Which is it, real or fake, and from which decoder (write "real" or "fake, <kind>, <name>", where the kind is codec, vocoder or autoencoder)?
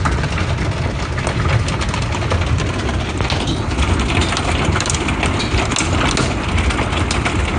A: real